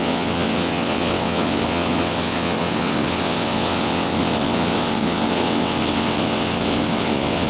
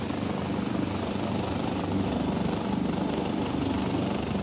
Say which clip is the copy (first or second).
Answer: first